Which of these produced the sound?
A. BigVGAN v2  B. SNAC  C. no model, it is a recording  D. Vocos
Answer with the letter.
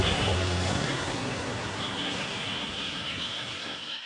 B